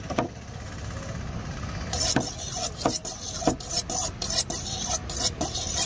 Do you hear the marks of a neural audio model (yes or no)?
no